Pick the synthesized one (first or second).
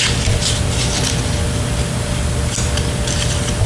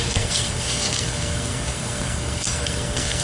second